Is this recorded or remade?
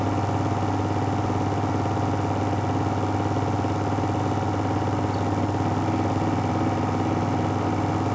recorded